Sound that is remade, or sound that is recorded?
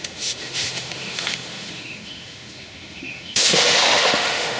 remade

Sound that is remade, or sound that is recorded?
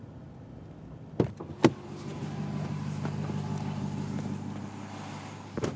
recorded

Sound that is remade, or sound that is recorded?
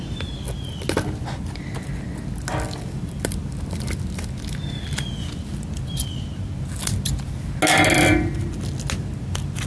recorded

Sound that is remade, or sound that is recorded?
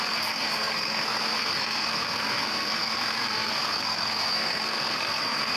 remade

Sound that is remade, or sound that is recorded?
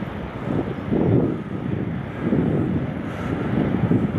recorded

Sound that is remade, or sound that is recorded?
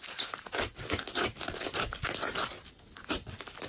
recorded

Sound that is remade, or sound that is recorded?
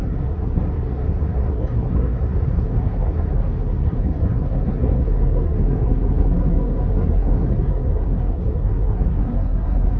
remade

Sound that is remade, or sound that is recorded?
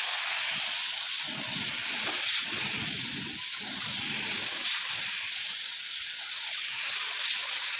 recorded